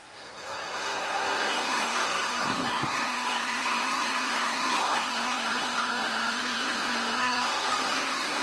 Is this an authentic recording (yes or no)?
no